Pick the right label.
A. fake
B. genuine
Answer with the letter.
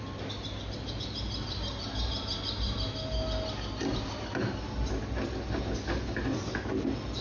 B